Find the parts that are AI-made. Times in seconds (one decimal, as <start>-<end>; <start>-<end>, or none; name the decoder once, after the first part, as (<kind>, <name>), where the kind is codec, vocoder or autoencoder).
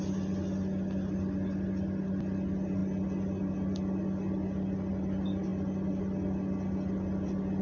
none